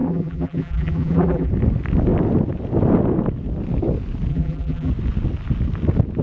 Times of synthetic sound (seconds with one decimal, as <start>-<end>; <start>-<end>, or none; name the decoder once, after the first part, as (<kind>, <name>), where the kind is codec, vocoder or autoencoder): 0.0-1.5 (vocoder, BigVGAN v2); 4.3-4.9